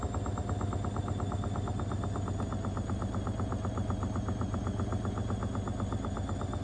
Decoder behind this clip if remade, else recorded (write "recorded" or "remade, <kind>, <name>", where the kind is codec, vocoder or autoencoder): recorded